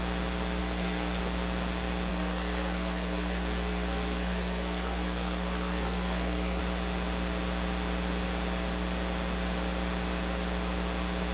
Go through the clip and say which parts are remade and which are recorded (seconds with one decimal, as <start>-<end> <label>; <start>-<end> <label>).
0.0-0.6 recorded; 0.6-1.2 remade; 1.2-2.1 recorded; 2.1-6.6 remade; 6.6-11.3 recorded